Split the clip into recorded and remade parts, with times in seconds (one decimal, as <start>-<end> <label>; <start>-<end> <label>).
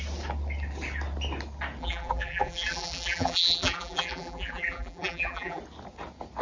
0.0-1.8 recorded; 1.8-5.6 remade; 5.6-6.4 recorded